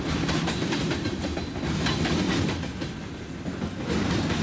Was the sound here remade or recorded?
recorded